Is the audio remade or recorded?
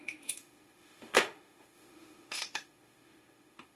remade